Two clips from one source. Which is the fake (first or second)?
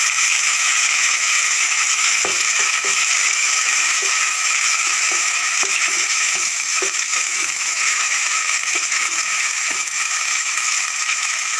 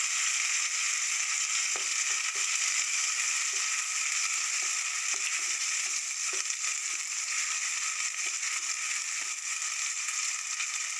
first